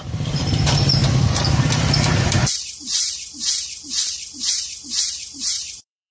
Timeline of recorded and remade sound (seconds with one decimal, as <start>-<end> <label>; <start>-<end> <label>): 0.0-1.0 remade; 1.0-2.2 recorded; 2.2-6.1 remade